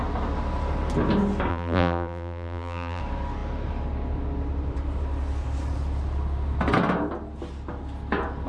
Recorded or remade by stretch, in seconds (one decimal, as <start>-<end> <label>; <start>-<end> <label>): 0.0-1.5 recorded; 1.5-3.0 remade; 3.0-8.5 recorded